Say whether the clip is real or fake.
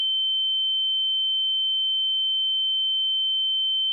real